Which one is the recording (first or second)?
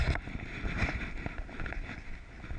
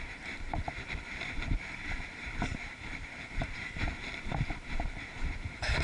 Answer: first